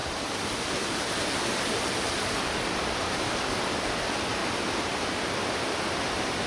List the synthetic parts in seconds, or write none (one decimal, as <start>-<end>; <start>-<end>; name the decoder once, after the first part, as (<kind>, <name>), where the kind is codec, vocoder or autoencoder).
none